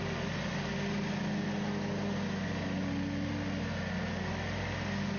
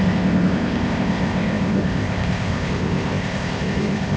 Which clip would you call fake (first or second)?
second